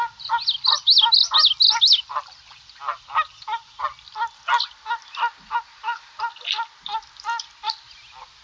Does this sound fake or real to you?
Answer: real